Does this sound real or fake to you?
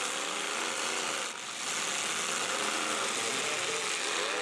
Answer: real